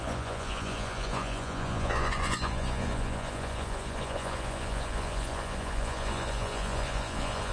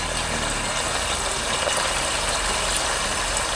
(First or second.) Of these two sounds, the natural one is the second